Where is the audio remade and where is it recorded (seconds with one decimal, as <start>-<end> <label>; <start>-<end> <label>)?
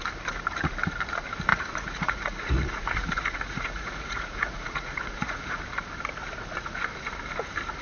0.0-1.5 recorded; 1.5-5.6 remade; 5.6-7.8 recorded